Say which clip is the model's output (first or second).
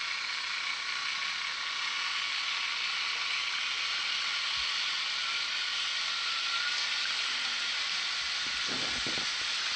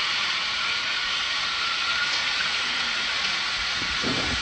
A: second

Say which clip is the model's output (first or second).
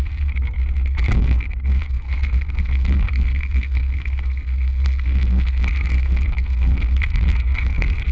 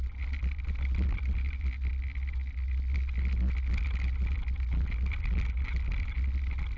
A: first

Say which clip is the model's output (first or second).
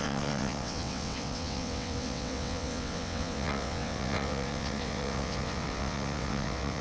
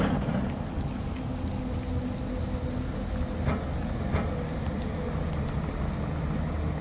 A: first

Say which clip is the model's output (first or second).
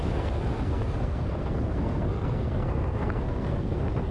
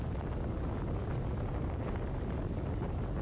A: first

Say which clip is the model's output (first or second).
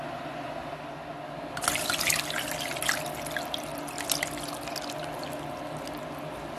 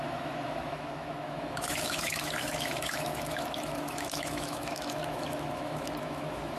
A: second